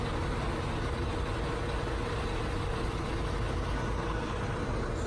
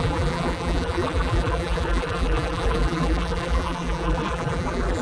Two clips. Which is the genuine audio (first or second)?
first